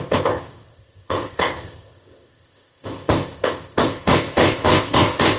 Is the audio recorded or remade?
remade